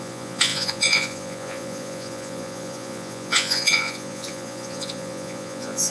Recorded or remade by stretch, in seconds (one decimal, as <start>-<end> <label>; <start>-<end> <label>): 0.0-5.9 remade